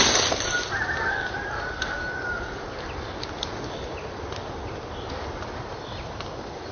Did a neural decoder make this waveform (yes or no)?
no